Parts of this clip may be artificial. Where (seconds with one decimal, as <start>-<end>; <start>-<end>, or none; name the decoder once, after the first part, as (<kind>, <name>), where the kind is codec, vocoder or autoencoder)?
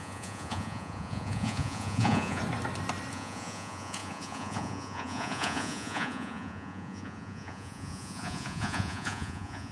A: 0.0-2.4 (vocoder, Vocos); 3.1-9.7